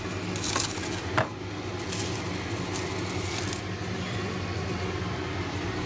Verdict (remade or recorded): recorded